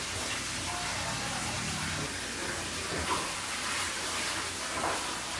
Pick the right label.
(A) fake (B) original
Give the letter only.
B